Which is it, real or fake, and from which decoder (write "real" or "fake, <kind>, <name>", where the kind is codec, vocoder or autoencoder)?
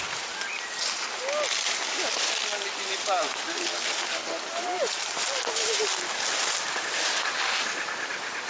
real